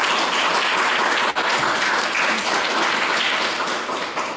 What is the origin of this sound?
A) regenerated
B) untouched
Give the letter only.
B